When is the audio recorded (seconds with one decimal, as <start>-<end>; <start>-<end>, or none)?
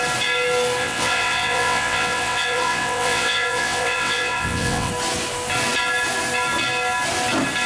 0.0-0.8; 4.9-7.7